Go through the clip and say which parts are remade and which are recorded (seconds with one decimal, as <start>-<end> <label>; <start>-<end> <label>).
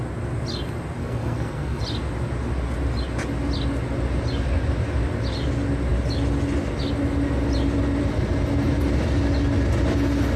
0.0-1.0 recorded; 1.0-1.8 remade; 1.8-10.4 recorded